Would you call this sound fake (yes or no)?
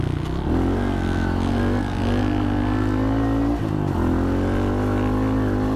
no